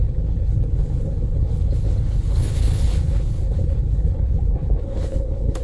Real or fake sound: fake